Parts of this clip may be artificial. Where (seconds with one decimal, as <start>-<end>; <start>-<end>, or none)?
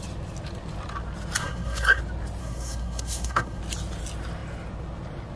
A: 1.4-2.0; 2.4-3.6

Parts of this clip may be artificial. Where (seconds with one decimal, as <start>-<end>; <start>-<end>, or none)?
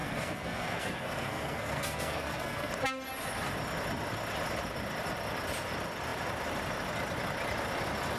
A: 0.0-2.7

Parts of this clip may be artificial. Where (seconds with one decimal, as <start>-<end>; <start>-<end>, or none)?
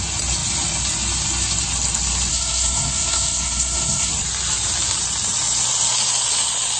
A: 2.3-4.1